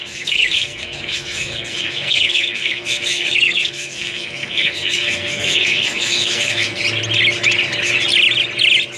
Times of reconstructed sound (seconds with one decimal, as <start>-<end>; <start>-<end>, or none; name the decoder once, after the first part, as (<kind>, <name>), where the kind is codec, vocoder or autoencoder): 0.0-6.8 (codec, SNAC)